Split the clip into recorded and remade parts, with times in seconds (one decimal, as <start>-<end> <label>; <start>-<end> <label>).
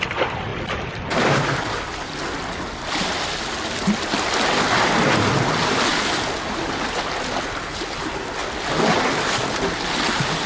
0.0-10.5 recorded